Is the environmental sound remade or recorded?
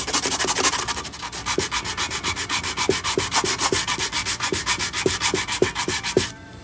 recorded